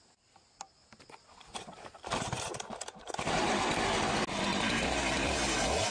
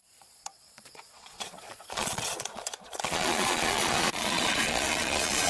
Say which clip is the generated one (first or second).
second